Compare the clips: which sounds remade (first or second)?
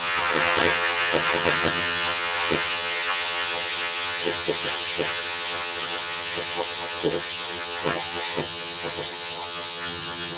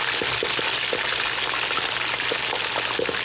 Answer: first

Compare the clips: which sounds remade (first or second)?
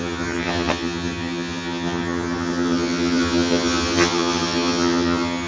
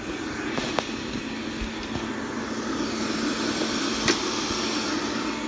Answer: first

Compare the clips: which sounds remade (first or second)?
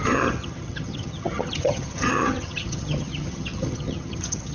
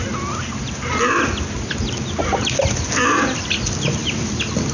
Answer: first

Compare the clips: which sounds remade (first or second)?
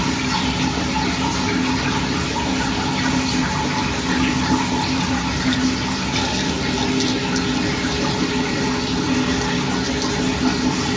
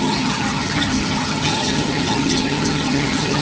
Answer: second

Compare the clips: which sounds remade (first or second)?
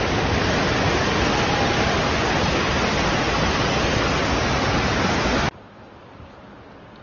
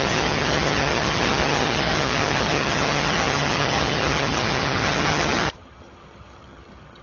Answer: second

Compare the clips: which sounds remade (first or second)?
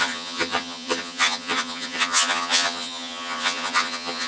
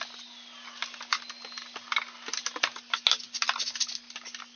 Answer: first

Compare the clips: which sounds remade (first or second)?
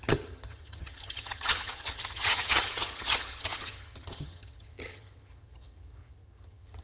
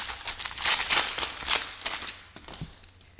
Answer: first